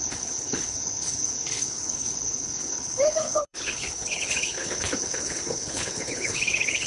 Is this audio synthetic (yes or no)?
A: yes